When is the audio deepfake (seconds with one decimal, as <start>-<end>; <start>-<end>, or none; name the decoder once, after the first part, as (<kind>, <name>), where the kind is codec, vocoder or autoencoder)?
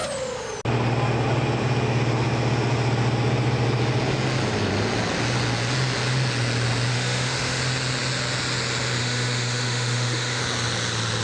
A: 6.9-7.6 (autoencoder, DAC-VAE); 9.0-10.4